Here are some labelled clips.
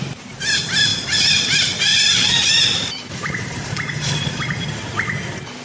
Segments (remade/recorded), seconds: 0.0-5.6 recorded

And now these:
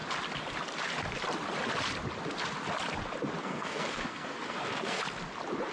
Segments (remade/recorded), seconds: 0.0-3.4 recorded; 3.4-5.0 remade; 5.0-5.7 recorded

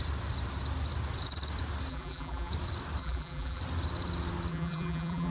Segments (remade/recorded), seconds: 0.0-1.9 recorded; 1.9-2.5 remade; 2.5-3.0 recorded; 3.0-3.6 remade; 3.6-4.5 recorded; 4.5-5.3 remade